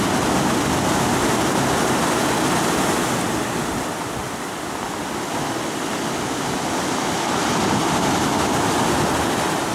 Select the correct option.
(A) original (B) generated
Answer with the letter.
A